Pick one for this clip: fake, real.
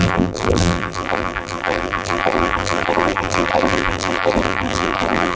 fake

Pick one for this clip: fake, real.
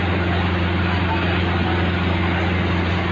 real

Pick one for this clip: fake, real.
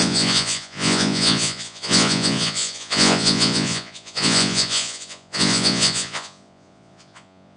fake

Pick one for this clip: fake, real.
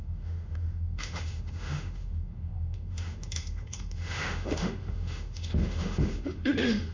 fake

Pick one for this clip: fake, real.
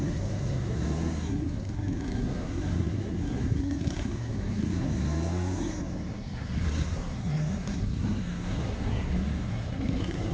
fake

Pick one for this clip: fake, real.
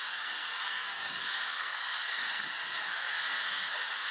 fake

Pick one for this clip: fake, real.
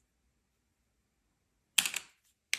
real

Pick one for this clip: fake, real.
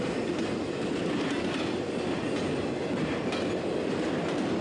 real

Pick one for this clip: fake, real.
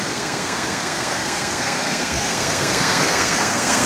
fake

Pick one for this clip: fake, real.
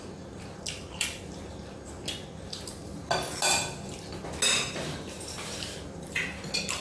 real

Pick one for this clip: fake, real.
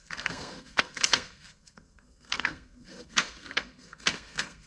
fake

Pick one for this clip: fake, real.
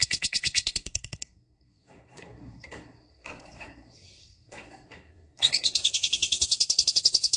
fake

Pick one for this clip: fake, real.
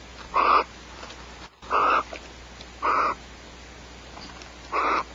real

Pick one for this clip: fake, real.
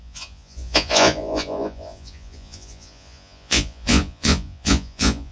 fake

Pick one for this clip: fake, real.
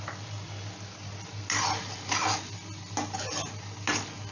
real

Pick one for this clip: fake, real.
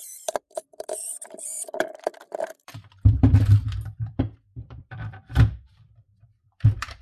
fake